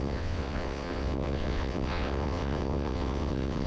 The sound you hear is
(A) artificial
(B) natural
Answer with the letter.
A